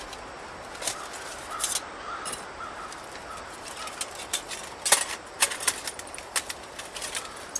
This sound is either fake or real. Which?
real